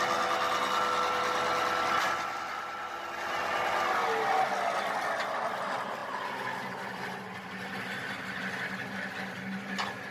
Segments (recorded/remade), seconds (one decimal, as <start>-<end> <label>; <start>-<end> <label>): 0.0-10.1 recorded